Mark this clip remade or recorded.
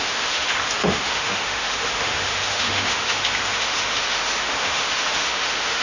remade